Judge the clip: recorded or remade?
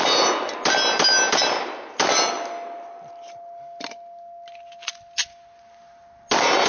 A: recorded